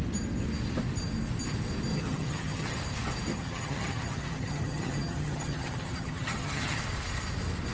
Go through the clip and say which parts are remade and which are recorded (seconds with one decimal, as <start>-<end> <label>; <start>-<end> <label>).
0.0-1.9 recorded; 1.9-2.8 remade; 2.8-3.3 recorded; 3.3-6.8 remade; 6.8-7.7 recorded